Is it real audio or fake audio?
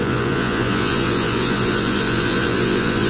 fake